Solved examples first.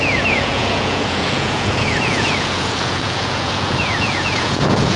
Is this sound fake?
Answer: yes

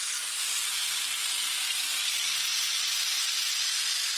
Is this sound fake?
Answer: no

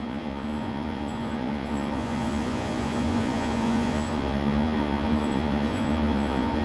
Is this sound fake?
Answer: yes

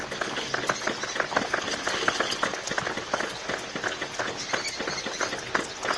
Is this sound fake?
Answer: no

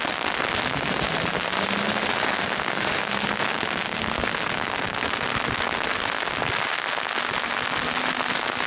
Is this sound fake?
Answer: no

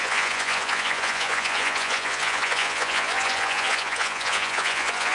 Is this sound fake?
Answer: yes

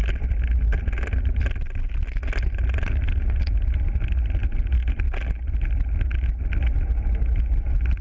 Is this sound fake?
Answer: no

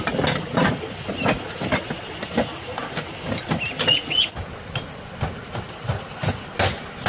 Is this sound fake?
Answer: no